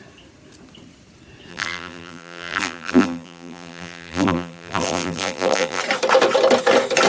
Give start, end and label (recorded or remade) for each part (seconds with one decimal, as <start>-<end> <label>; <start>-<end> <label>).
0.0-1.5 recorded; 1.5-5.8 remade; 5.8-7.1 recorded